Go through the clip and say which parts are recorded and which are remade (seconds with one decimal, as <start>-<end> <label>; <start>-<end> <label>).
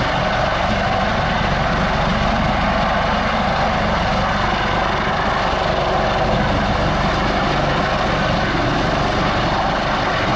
0.0-10.4 recorded